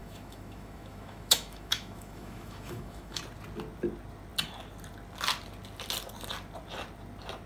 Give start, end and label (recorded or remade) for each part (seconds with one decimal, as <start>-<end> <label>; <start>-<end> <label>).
0.0-3.2 remade; 3.2-7.5 recorded